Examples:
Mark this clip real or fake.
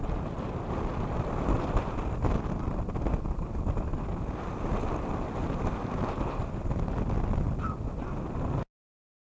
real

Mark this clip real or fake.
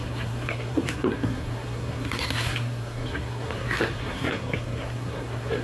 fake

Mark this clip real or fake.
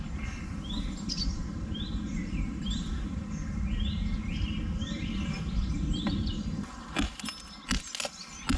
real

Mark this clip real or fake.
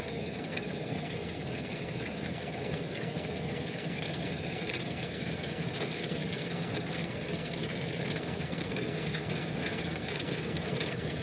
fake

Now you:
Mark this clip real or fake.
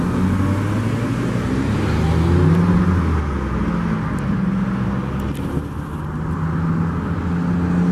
real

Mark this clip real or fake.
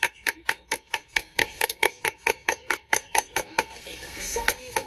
fake